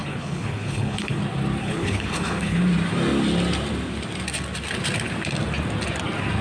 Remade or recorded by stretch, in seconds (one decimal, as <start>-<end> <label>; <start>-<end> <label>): 0.0-1.2 remade; 1.2-1.6 recorded; 1.6-2.6 remade; 2.6-6.4 recorded